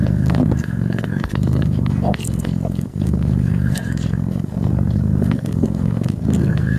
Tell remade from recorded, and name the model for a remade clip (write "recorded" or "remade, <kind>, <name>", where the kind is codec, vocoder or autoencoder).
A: remade, codec, SNAC